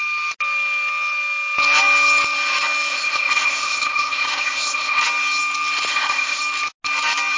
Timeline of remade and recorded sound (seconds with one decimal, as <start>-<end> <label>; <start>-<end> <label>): 0.0-2.9 recorded; 2.9-5.0 remade; 5.0-5.9 recorded; 5.9-6.4 remade; 6.4-7.4 recorded

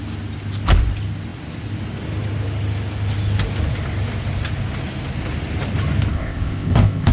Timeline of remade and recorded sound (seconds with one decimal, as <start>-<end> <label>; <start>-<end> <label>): 0.0-6.1 recorded; 6.1-7.1 remade

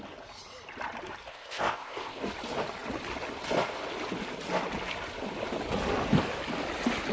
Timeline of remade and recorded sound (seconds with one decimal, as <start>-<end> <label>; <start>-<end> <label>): 0.0-1.3 recorded; 1.3-2.2 remade; 2.2-7.1 recorded